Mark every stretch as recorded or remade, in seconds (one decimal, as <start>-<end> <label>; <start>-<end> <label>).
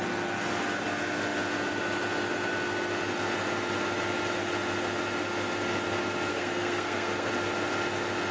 0.0-6.3 recorded; 6.3-7.3 remade; 7.3-8.3 recorded